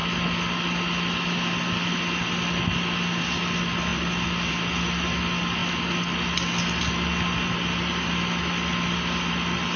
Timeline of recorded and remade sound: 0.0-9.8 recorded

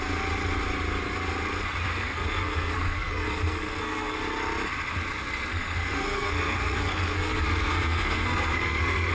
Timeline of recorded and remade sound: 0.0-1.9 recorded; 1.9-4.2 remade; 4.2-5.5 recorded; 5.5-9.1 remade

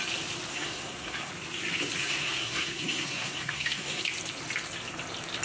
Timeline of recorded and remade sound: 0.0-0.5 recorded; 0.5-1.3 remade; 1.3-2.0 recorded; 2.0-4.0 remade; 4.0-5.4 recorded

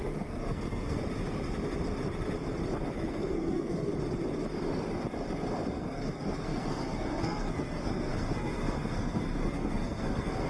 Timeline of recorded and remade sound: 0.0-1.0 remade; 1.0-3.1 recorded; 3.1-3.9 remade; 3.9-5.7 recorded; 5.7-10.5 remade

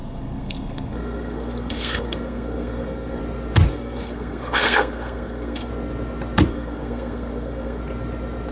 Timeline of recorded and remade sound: 0.0-3.2 remade; 3.2-3.7 recorded; 3.7-5.7 remade; 5.7-6.5 recorded; 6.5-7.8 remade; 7.8-8.5 recorded

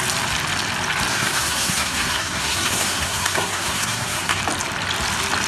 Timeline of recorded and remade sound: 0.0-1.1 recorded; 1.1-4.4 remade; 4.4-5.5 recorded